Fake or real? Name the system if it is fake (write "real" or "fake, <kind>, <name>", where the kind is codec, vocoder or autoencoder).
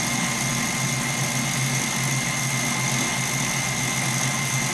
real